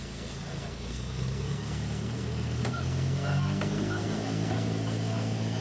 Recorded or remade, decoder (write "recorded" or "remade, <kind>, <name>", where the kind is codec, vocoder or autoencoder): remade, codec, SNAC